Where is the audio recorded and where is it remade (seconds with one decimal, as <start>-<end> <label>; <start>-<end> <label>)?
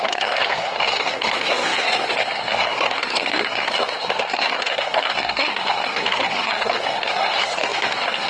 0.0-8.3 remade